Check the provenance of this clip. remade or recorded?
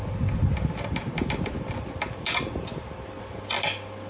recorded